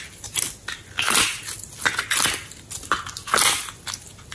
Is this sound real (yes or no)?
yes